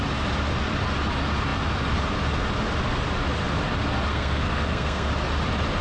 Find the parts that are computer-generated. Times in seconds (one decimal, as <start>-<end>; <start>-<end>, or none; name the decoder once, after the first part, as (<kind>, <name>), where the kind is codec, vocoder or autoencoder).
4.1-5.1 (codec, SNAC)